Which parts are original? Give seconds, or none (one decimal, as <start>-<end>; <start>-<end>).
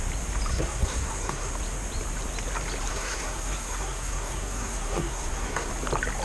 0.0-0.5; 1.5-2.9; 5.7-6.2